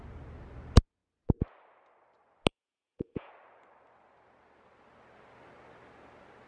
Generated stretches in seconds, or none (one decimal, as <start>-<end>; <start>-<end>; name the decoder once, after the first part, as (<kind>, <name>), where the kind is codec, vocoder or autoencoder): 2.5-3.3 (vocoder, Vocos)